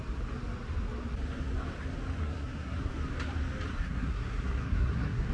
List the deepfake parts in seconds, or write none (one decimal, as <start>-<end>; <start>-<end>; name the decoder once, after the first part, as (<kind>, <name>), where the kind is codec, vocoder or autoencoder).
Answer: 2.2-2.9 (codec, SNAC); 3.7-5.3